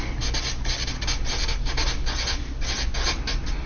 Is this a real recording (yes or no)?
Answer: yes